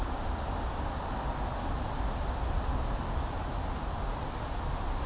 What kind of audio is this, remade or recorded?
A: recorded